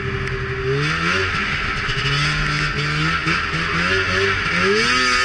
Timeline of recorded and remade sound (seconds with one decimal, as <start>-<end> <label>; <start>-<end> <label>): 0.0-5.2 recorded